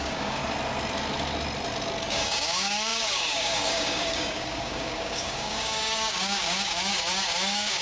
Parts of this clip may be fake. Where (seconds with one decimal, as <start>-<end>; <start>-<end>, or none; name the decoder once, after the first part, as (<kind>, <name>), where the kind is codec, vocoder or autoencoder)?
0.0-0.4 (codec, DAC); 2.1-7.8

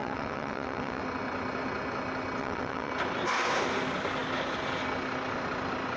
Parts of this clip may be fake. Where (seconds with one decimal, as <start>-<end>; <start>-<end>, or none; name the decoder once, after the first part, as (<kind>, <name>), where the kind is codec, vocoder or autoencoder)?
0.0-1.0 (vocoder, WaveNeXt); 2.4-2.9